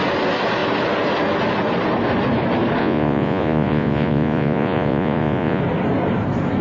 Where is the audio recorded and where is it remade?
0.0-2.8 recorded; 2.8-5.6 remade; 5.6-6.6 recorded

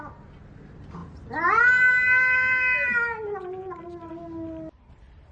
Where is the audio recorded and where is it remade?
0.0-5.3 recorded